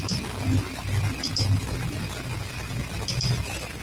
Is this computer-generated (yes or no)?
no